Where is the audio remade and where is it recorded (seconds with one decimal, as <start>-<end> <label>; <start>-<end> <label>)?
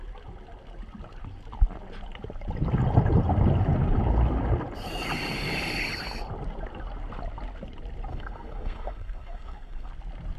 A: 0.0-8.1 recorded; 8.1-9.9 remade; 9.9-10.4 recorded